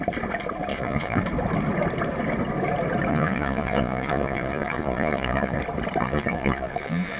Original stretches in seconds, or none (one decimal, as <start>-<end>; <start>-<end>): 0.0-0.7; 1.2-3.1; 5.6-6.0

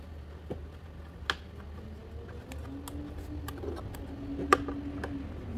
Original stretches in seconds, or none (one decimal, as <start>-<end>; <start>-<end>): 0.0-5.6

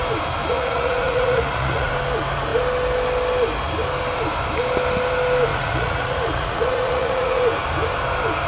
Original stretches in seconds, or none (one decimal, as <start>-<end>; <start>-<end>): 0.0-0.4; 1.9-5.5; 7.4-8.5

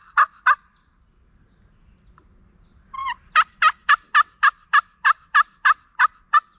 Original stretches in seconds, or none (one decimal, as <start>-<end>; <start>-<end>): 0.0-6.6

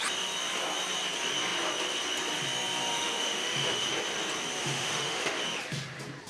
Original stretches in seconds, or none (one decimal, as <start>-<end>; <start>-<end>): 0.0-2.9; 3.9-4.6; 5.4-6.3

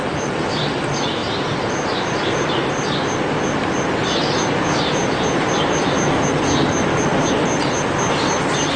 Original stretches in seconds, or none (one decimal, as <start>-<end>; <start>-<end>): 0.0-8.8

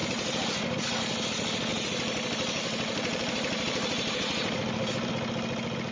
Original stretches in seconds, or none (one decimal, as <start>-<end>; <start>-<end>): 1.0-1.7; 5.1-5.9